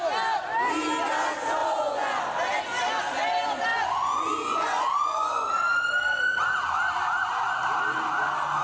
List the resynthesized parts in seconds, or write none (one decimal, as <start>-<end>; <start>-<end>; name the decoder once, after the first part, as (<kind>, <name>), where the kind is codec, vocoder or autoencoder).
1.6-2.2 (vocoder, Vocos); 3.7-5.5